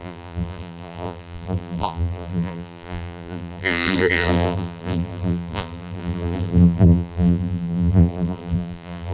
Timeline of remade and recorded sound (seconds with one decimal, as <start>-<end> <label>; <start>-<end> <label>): 0.0-9.1 remade